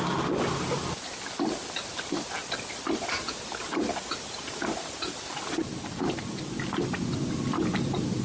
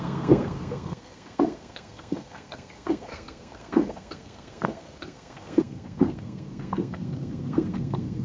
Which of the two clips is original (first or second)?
first